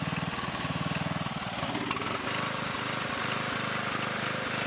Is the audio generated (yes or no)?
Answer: no